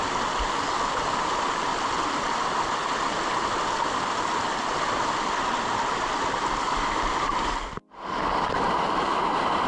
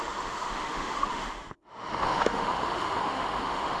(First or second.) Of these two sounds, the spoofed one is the second